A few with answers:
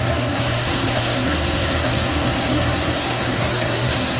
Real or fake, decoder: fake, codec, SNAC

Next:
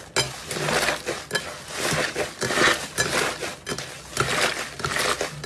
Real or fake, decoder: real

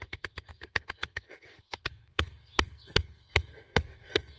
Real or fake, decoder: fake, codec, SNAC